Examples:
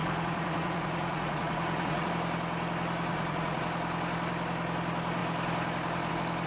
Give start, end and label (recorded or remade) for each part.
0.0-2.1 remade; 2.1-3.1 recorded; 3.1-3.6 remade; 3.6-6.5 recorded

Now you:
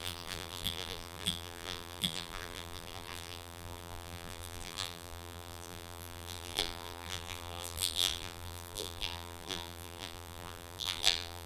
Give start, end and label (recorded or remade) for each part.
0.0-11.5 remade

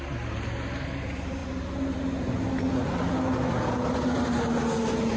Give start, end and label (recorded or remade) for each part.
0.0-5.2 recorded

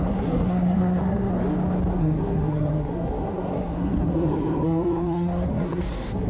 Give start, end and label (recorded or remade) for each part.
0.0-1.3 remade; 1.3-1.9 recorded; 1.9-6.3 remade

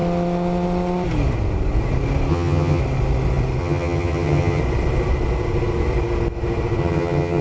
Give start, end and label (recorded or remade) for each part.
0.0-2.3 recorded; 2.3-2.8 remade; 2.8-3.6 recorded; 3.6-4.6 remade; 4.6-6.8 recorded; 6.8-7.4 remade

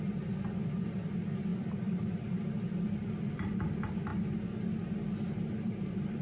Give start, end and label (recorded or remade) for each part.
0.0-1.5 recorded; 1.5-2.3 remade; 2.3-3.0 recorded; 3.0-3.6 remade; 3.6-6.2 recorded